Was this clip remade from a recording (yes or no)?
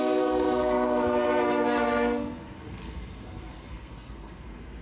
yes